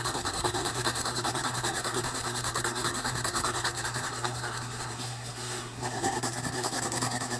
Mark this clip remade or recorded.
remade